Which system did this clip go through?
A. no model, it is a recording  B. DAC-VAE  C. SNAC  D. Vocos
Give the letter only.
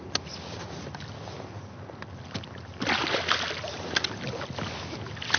A